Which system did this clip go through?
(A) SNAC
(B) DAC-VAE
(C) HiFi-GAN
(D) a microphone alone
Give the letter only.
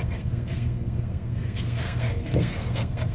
A